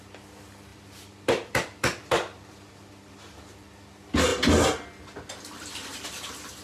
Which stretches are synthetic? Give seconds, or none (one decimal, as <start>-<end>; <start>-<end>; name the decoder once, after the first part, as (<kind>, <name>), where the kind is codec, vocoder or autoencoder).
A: 0.7-2.7 (vocoder, BigVGAN v2)